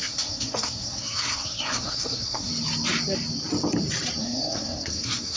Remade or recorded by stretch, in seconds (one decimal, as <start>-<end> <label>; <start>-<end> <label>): 0.0-2.5 remade; 2.5-4.2 recorded; 4.2-5.4 remade